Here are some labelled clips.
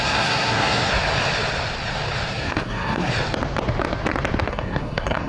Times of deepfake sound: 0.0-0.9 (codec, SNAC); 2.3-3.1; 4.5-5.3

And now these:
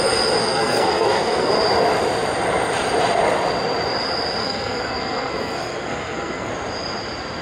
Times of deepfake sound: 0.4-1.5 (codec, SNAC); 4.4-6.5

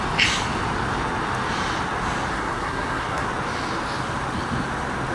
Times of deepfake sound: 2.3-3.3 (codec, SNAC)

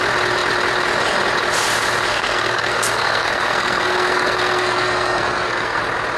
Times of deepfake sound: 2.1-5.8 (codec, SNAC)

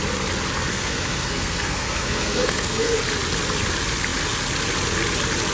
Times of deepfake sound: 0.7-3.0 (codec, SNAC)

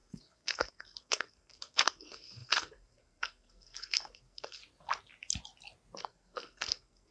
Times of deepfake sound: 0.0-4.6 (codec, SNAC); 6.0-7.1